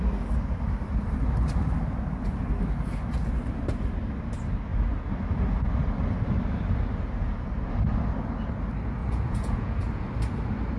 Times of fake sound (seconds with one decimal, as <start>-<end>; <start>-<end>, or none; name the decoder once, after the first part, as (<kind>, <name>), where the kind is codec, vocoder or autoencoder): 9.0-9.8 (vocoder, Vocos)